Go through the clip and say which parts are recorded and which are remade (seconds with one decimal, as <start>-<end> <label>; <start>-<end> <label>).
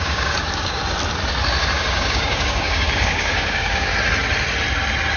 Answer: 0.0-0.8 remade; 0.8-1.6 recorded; 1.6-3.9 remade; 3.9-5.2 recorded